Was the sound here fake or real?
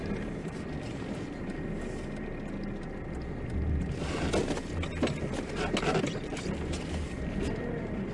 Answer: real